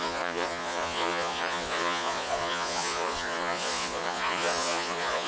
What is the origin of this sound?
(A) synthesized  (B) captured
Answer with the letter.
A